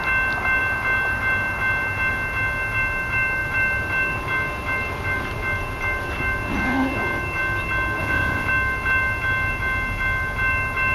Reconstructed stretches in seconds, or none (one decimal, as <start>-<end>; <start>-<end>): 8.0-8.5

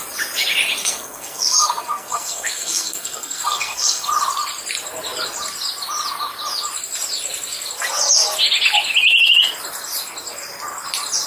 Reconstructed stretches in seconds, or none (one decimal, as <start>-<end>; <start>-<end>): 0.8-4.1

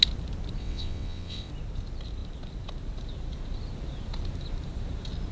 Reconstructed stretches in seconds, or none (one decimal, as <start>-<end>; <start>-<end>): 0.6-1.5

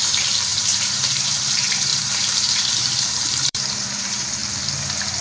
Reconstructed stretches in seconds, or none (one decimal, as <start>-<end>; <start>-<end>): 0.0-4.4

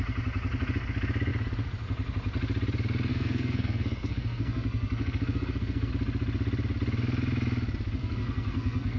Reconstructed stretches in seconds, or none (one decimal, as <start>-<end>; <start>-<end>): 3.1-5.9; 8.0-9.0

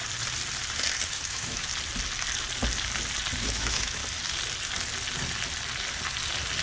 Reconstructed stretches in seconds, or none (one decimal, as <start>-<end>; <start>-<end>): 1.1-1.7; 3.4-4.0